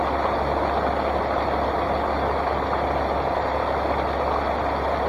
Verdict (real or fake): real